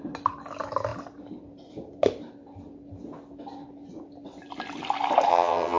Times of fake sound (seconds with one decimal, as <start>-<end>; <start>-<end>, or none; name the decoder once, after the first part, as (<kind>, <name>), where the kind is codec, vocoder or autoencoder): 5.3-5.8 (vocoder, HiFi-GAN)